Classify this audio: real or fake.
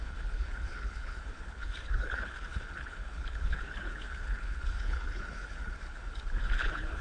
fake